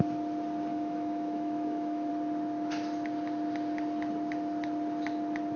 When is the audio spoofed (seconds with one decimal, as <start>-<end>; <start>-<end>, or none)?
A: 0.7-2.1